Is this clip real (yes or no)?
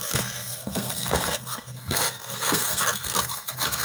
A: no